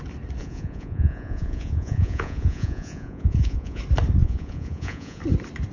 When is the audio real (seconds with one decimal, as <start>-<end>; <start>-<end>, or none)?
0.0-0.4; 3.8-4.2; 5.2-5.7